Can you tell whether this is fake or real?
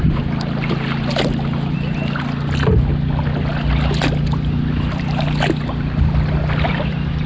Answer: real